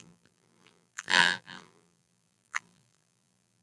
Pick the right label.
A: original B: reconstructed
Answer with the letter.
B